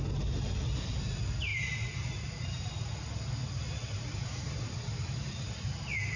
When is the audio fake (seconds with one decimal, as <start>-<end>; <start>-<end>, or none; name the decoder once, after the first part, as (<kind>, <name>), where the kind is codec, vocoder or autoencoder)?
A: 3.8-5.7 (vocoder, BigVGAN v2)